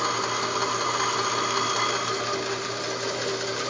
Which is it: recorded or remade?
recorded